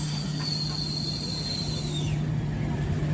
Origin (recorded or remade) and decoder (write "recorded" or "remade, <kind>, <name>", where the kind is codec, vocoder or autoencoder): recorded